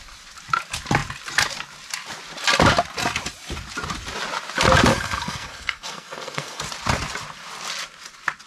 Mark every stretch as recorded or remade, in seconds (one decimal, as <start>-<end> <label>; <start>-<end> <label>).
0.0-4.9 recorded; 4.9-6.6 remade; 6.6-8.5 recorded